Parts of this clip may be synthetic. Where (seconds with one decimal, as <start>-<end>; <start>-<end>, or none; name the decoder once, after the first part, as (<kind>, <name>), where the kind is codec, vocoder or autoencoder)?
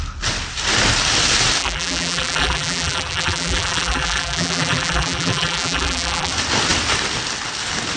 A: 1.6-6.3 (vocoder, BigVGAN v2)